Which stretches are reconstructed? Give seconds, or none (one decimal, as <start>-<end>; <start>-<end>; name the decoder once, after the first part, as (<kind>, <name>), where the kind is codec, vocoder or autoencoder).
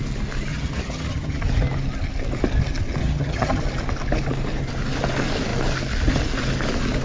0.5-1.4 (vocoder, HiFi-GAN); 3.0-3.6